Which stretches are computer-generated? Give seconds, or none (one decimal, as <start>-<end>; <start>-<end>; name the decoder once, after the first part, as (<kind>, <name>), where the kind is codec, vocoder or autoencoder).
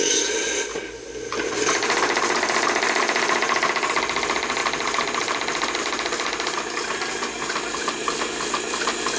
none